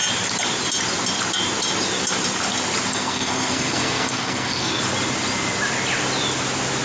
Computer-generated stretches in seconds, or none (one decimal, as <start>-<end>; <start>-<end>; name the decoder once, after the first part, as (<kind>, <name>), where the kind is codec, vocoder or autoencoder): 2.9-4.8 (codec, SNAC)